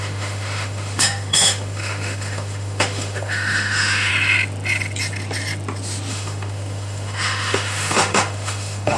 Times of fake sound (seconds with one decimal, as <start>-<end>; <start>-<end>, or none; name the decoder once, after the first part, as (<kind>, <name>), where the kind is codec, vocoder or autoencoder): 0.0-4.1 (autoencoder, DAC-VAE); 6.1-9.0